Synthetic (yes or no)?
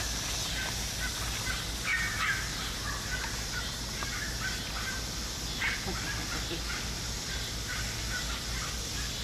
no